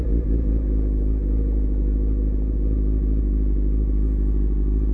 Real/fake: real